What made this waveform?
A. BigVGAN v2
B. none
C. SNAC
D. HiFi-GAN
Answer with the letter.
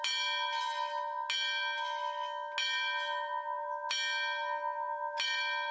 B